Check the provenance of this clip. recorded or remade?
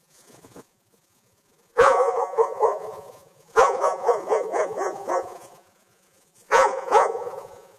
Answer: remade